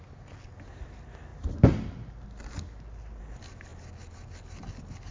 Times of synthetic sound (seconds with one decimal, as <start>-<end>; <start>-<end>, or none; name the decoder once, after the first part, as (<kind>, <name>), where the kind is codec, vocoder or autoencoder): none